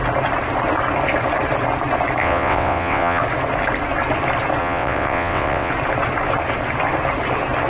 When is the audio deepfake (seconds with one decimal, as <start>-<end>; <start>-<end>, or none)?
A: 2.2-3.2; 4.6-5.7